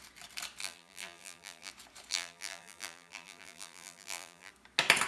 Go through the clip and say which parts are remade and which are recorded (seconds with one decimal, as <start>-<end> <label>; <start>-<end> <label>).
0.0-0.6 recorded; 0.6-1.7 remade; 1.7-2.1 recorded; 2.1-4.5 remade; 4.5-5.1 recorded